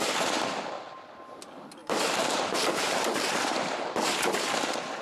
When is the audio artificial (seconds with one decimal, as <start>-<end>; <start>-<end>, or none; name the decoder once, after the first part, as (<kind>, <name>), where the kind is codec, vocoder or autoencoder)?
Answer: 1.8-4.1 (vocoder, BigVGAN v2)